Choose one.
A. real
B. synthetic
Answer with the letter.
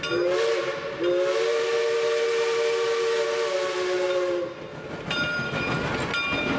A